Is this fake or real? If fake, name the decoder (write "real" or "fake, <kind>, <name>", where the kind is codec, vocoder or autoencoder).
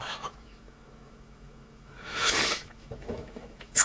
fake, autoencoder, DAC-VAE